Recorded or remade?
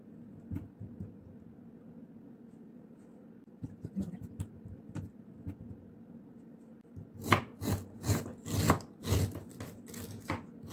recorded